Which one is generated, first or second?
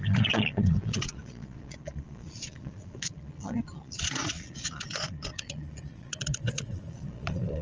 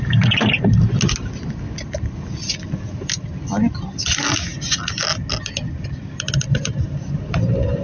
first